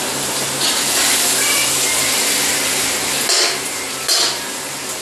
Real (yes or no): yes